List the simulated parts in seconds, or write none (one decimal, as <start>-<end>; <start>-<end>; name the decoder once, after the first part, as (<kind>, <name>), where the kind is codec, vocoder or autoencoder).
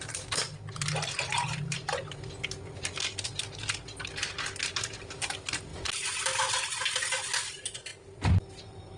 none